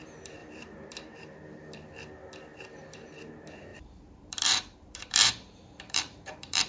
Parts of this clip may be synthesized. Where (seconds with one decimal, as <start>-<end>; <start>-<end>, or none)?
0.4-1.2; 2.5-3.1; 3.7-6.7